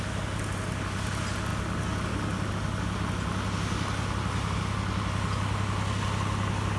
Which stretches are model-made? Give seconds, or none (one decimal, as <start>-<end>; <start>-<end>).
none